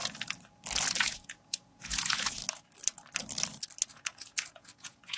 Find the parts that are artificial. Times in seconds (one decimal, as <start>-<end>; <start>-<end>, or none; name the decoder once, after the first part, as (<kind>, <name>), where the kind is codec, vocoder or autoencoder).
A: 1.0-2.4 (vocoder, Vocos); 3.9-5.2